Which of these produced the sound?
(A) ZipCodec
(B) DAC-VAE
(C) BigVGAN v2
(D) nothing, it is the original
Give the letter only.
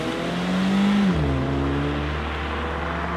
D